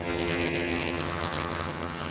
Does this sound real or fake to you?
fake